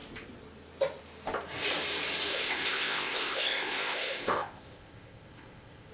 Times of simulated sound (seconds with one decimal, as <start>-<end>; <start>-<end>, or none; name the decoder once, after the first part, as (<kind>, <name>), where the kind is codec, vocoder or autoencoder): 2.3-5.9 (codec, ZipCodec)